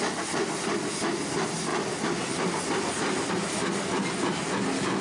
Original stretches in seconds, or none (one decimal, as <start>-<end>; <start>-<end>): 0.0-5.0